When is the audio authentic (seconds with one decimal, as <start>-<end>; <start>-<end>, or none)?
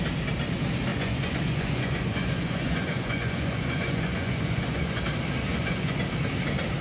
0.0-0.9; 5.0-5.5; 6.0-6.8